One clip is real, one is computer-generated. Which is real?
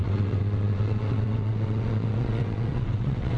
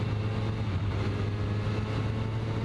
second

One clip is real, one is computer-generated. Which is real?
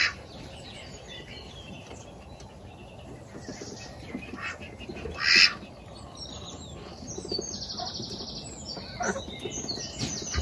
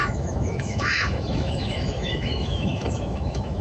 first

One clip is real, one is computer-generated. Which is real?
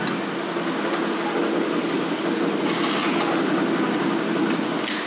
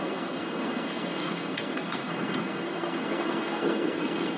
first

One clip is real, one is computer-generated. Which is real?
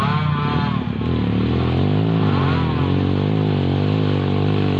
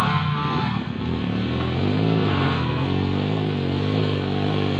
first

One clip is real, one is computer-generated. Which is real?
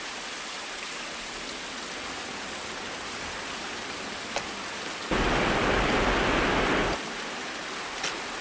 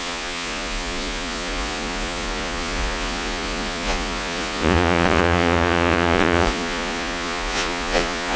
first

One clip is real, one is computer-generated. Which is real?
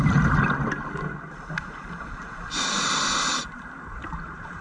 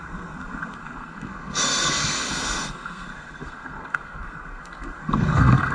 first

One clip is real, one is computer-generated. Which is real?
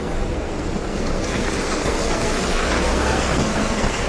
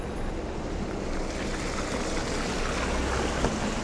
second